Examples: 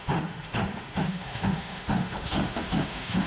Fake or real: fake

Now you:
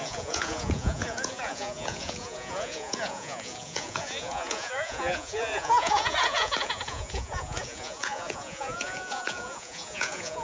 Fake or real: fake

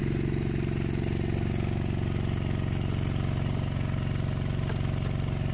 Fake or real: real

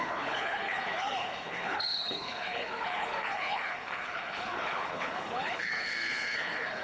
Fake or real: fake